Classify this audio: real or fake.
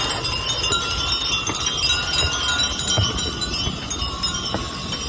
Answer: real